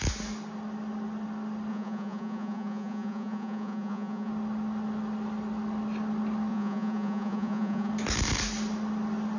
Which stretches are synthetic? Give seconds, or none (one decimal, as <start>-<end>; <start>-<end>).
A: 1.7-4.3; 6.5-7.9

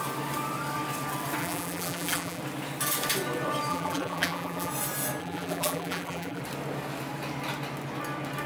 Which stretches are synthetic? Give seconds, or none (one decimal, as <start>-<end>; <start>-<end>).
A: 1.4-2.4; 3.7-4.7; 5.2-6.4